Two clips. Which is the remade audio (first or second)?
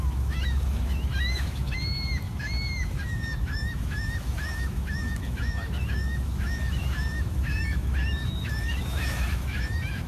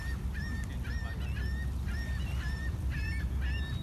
first